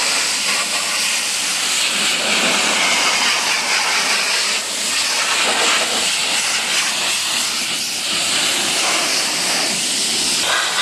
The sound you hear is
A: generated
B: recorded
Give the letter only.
B